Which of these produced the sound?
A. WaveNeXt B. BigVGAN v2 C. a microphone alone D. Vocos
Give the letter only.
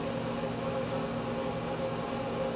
C